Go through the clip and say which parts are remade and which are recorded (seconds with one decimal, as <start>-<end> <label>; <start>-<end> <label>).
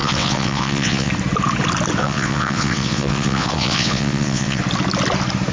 0.0-1.1 remade; 1.1-2.0 recorded; 2.0-4.6 remade; 4.6-5.5 recorded